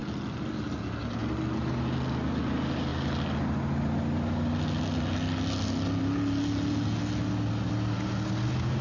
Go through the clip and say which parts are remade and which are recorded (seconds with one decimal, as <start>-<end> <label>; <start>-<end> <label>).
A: 0.0-8.8 recorded